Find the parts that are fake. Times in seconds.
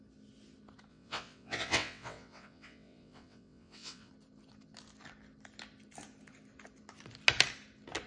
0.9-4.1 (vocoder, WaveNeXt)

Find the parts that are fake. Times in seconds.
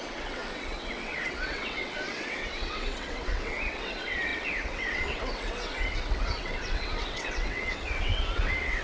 0.0-8.8 (vocoder, WaveNeXt)